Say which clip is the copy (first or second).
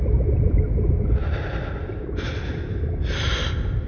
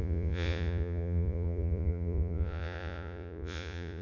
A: second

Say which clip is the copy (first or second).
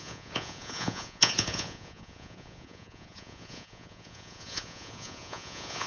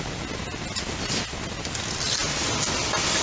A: first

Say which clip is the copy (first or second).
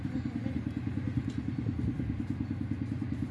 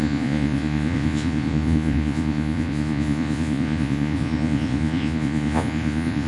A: second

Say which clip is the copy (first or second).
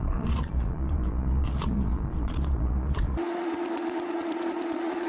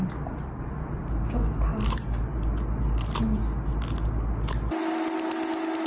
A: first